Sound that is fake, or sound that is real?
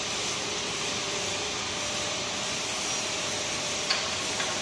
real